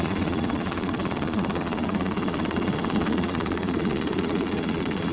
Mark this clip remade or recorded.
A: remade